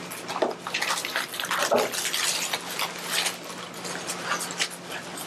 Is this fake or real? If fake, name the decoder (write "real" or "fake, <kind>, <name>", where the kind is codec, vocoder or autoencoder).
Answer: real